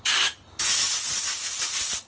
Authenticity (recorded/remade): recorded